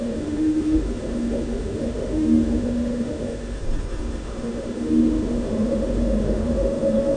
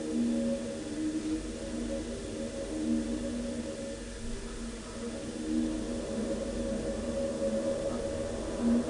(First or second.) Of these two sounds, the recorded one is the second